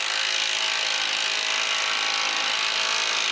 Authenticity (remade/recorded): recorded